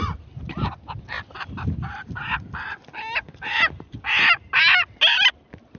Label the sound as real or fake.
real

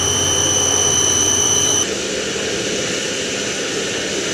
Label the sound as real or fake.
fake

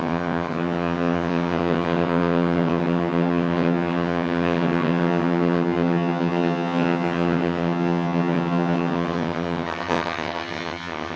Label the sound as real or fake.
fake